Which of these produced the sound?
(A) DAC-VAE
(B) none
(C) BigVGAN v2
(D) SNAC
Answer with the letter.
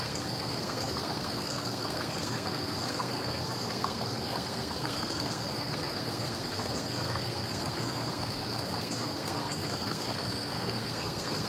D